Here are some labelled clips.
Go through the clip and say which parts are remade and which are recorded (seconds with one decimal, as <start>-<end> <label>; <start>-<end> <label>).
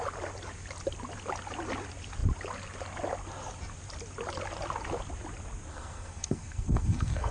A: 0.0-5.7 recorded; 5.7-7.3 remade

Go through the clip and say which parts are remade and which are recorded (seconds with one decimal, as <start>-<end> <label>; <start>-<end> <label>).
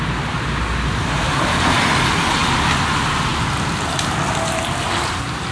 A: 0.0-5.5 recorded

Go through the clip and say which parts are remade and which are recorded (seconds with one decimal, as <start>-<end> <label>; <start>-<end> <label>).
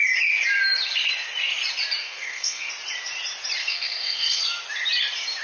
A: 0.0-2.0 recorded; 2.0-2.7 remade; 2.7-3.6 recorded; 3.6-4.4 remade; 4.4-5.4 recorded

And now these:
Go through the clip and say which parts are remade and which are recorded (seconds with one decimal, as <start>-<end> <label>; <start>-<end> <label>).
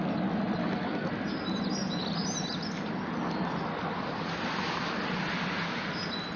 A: 0.0-0.6 recorded; 0.6-1.1 remade; 1.1-6.4 recorded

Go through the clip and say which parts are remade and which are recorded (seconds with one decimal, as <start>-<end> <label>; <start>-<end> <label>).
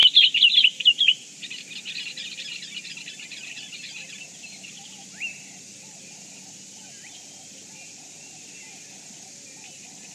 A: 0.0-10.1 recorded